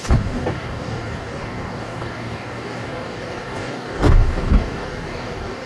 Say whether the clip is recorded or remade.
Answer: remade